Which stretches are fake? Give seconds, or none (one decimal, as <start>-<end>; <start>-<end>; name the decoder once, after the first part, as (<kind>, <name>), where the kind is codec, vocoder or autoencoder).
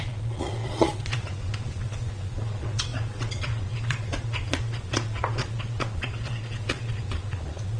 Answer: 0.0-7.8 (vocoder, Vocos)